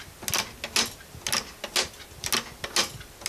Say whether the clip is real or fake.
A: real